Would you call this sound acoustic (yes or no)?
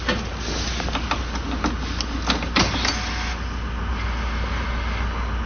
yes